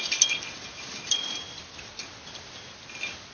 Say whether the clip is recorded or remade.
recorded